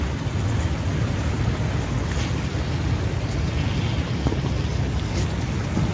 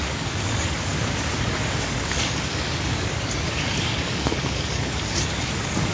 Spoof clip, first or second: second